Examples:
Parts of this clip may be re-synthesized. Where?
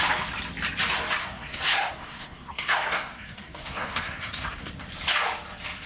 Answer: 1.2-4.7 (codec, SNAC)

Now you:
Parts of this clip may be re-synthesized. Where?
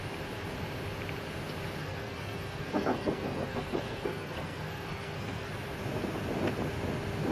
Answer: 1.8-5.5 (codec, SNAC)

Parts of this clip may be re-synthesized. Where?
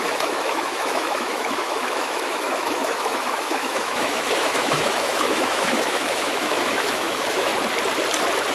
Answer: 0.0-7.5 (autoencoder, DAC-VAE)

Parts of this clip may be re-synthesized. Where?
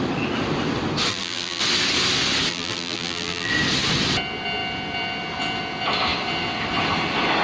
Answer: 1.1-1.6 (vocoder, BigVGAN v2); 2.5-3.5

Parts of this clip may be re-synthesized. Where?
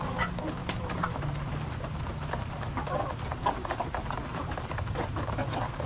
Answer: 0.6-1.2 (vocoder, BigVGAN v2); 4.3-5.5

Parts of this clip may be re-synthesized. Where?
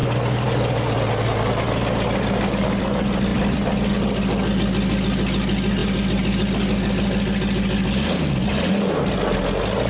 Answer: 3.3-3.9 (vocoder, BigVGAN v2)